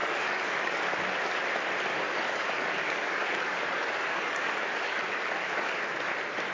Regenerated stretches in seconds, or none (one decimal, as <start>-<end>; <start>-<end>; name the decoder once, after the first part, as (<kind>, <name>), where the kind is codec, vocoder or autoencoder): 0.0-0.8 (codec, DAC); 1.9-5.8